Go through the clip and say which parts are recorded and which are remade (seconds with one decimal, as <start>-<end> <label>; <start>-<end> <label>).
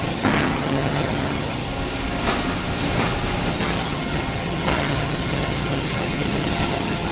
0.0-1.7 remade; 1.7-3.5 recorded; 3.5-7.1 remade